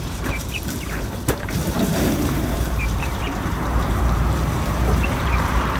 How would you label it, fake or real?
fake